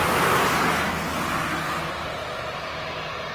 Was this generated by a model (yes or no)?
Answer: no